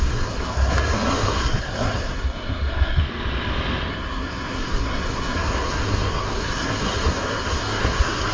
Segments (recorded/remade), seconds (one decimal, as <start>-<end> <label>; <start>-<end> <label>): 0.0-3.0 remade; 3.0-3.9 recorded; 3.9-8.3 remade